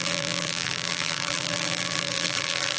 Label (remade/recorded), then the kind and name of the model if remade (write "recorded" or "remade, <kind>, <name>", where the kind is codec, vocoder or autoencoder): remade, vocoder, BigVGAN v2